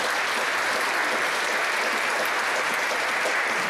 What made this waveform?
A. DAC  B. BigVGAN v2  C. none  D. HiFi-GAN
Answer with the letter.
C